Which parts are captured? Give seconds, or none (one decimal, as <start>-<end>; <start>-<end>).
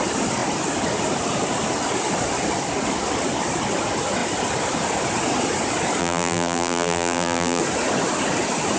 0.0-6.0; 7.6-8.8